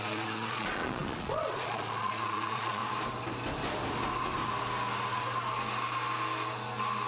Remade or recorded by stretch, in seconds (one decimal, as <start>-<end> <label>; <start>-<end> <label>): 0.0-2.8 remade; 2.8-7.1 recorded